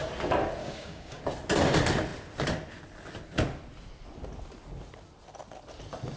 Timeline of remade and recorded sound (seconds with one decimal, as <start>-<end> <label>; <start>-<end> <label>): 0.0-0.6 recorded; 0.6-1.2 remade; 1.2-6.2 recorded